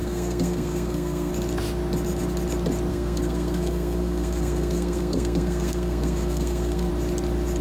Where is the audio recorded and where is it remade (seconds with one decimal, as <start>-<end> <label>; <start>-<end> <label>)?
0.0-1.3 remade; 1.3-2.9 recorded; 2.9-6.9 remade; 6.9-7.6 recorded

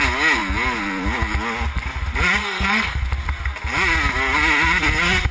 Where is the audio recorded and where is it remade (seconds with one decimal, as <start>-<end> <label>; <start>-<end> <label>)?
0.0-2.4 recorded; 2.4-3.0 remade; 3.0-5.3 recorded

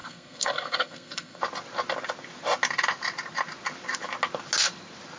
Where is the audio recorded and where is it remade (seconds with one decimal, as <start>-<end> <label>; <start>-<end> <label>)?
0.0-1.4 remade; 1.4-5.2 recorded

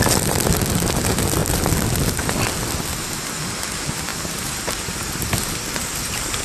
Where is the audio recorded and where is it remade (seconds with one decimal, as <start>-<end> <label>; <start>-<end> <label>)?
0.0-6.4 recorded